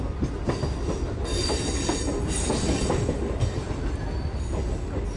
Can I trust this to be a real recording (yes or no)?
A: yes